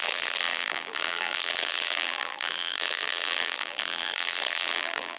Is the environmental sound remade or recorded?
remade